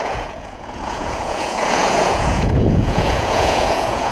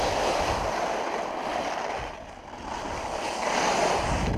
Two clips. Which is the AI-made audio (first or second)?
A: first